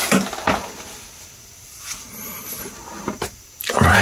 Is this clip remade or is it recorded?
recorded